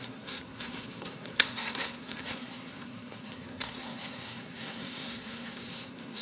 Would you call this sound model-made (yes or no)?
yes